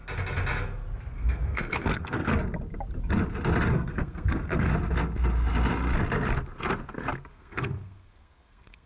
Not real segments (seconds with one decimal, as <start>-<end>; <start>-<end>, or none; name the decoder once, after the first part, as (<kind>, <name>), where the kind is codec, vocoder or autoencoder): 1.1-2.3 (codec, SNAC); 3.7-4.7; 7.3-8.9